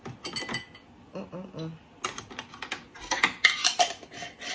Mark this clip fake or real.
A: real